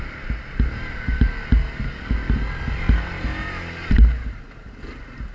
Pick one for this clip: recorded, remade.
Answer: recorded